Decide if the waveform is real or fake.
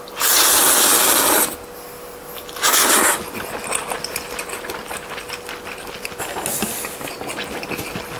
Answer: real